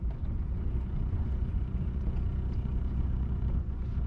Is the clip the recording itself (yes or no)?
no